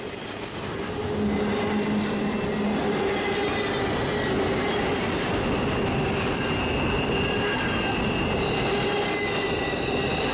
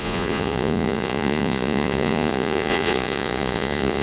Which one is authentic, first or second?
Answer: first